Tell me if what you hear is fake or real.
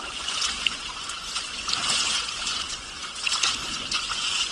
fake